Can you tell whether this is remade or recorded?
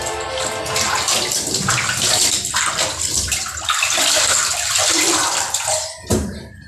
remade